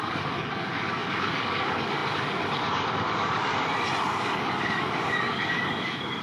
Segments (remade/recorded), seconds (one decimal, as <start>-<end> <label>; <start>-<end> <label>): 0.0-3.5 remade; 3.5-4.0 recorded; 4.0-6.2 remade